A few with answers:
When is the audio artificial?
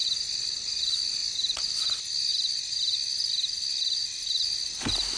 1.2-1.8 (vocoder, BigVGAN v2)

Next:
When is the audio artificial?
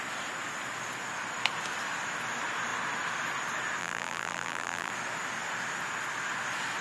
3.8-4.9 (vocoder, BigVGAN v2)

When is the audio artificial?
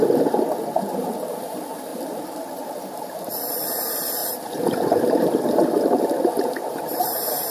0.0-7.5 (vocoder, BigVGAN v2)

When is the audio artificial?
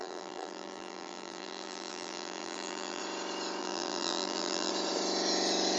0.0-3.0 (vocoder, BigVGAN v2); 3.6-4.7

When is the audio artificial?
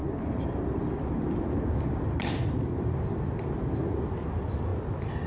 0.0-3.2 (vocoder, BigVGAN v2)